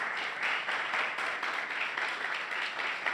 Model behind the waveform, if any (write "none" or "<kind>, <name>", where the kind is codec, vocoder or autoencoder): none